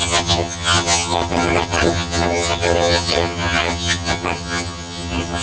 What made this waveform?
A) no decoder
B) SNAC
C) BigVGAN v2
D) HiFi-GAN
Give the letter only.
D